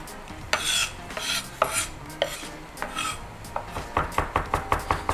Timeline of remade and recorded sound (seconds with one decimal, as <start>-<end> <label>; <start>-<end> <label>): 0.0-5.1 recorded